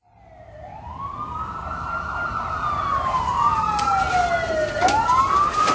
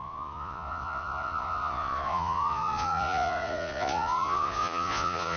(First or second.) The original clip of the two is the first